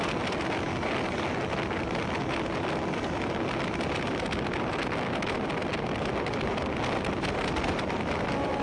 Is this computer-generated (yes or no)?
no